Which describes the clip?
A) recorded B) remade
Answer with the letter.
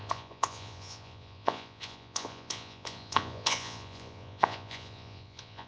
B